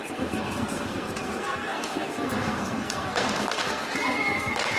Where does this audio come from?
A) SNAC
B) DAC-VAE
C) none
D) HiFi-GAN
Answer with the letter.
A